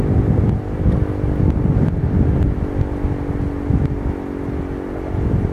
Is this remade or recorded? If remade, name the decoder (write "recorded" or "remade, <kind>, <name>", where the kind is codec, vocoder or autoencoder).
recorded